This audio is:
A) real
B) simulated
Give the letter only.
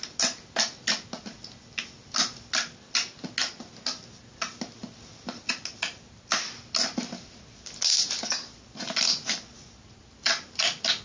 A